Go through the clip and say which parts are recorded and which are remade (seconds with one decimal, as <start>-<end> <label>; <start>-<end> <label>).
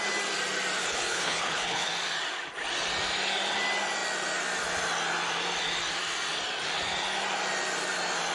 0.0-0.8 recorded; 0.8-1.9 remade; 1.9-8.3 recorded